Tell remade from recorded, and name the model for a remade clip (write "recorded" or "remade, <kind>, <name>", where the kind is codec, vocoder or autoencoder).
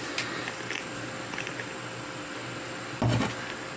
recorded